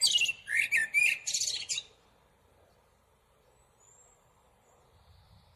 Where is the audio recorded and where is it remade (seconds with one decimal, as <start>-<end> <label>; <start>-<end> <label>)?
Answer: 0.0-5.6 recorded